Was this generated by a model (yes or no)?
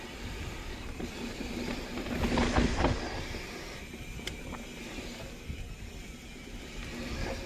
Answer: no